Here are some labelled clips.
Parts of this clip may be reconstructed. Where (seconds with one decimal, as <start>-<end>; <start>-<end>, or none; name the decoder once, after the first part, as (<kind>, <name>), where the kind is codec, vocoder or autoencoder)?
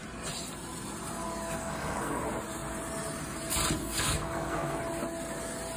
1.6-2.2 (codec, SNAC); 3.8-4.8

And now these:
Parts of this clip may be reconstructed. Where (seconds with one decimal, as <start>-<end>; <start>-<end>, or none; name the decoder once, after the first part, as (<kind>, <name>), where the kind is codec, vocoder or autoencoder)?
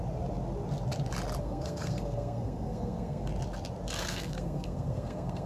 1.4-3.3 (codec, SNAC); 4.0-5.5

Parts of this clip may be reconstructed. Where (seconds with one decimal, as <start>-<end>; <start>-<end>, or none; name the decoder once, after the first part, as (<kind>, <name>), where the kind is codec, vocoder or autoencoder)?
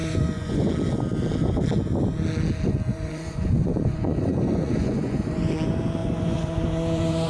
0.0-0.7 (vocoder, Vocos); 2.9-5.5; 6.0-7.3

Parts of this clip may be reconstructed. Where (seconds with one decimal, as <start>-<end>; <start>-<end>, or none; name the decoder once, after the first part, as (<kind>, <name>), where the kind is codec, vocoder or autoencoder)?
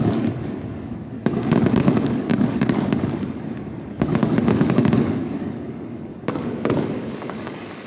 0.0-7.9 (codec, DAC)